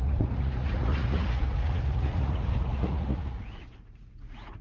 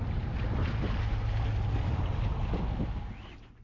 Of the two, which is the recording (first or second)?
second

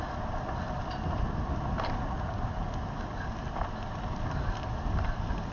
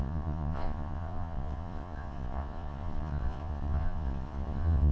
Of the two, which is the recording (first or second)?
first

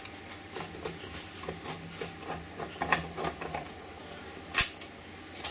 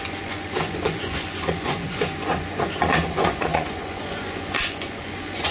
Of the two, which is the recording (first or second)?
first